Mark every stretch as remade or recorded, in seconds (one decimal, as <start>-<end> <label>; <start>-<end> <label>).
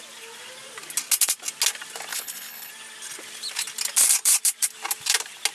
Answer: 0.0-2.1 recorded; 2.1-2.7 remade; 2.7-5.5 recorded